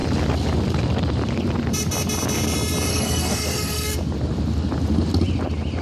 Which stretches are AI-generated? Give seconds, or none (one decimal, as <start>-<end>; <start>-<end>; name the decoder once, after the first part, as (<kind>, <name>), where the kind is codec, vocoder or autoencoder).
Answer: 2.9-4.0 (codec, SNAC)